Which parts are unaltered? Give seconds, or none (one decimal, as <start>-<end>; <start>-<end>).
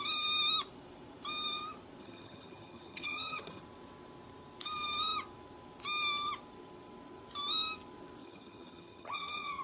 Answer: 0.0-2.0; 3.6-8.2